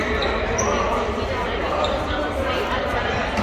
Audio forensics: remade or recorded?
recorded